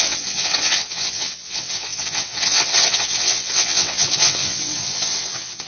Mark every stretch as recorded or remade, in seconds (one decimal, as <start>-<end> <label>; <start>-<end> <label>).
0.0-5.7 remade